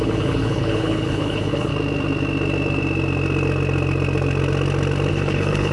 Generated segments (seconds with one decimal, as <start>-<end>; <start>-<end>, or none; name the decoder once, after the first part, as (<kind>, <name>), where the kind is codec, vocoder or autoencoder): 0.0-1.7 (codec, HILCodec); 5.1-5.7